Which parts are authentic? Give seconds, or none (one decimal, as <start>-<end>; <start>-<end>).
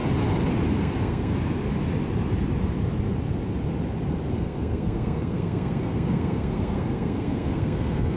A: 0.0-0.8; 1.3-4.3